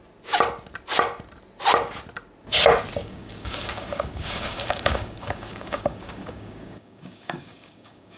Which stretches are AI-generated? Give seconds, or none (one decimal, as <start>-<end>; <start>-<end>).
3.0-8.2